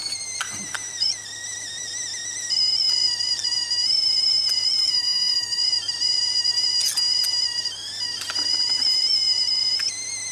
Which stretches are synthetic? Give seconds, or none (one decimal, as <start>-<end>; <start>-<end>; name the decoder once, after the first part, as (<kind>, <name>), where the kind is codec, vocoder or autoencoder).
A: 4.8-5.6 (autoencoder, DAC-VAE)